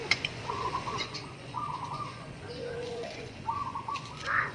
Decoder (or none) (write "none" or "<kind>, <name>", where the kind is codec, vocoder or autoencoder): vocoder, Vocos